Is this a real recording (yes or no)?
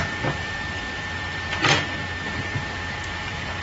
yes